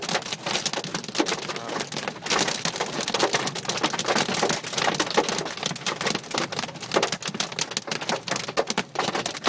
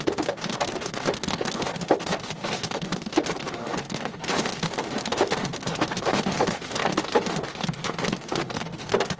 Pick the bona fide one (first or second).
first